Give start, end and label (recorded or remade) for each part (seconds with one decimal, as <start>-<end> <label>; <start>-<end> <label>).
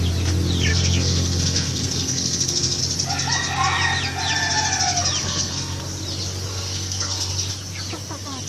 0.0-0.7 recorded; 0.7-2.8 remade; 2.8-5.2 recorded; 5.2-5.8 remade; 5.8-6.5 recorded; 6.5-7.3 remade; 7.3-8.5 recorded